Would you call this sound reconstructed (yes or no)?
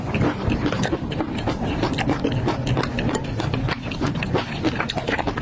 yes